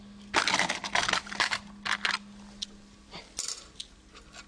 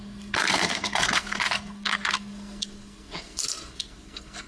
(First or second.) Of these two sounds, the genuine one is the first